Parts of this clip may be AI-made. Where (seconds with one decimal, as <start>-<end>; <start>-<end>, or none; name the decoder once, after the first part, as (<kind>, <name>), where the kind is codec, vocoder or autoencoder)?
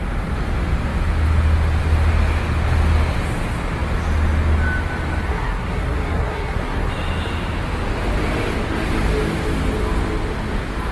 5.3-6.9 (codec, SNAC)